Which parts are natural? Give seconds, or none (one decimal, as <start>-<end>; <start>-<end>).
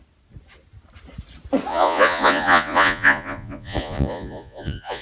0.0-1.7